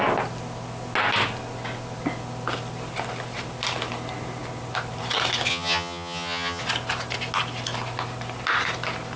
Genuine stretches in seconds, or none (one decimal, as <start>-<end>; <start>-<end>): 0.0-5.5; 6.6-9.2